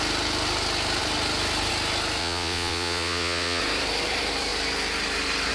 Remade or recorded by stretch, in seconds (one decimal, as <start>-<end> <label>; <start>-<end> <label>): 0.0-2.2 recorded; 2.2-3.6 remade; 3.6-5.5 recorded